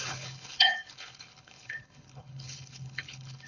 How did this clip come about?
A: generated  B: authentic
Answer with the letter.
A